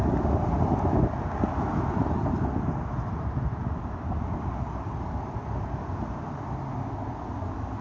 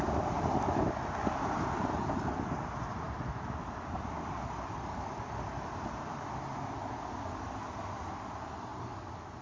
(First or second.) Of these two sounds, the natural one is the first